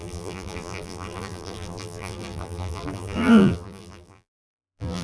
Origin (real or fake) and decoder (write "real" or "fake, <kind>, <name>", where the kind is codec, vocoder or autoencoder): fake, vocoder, BigVGAN v2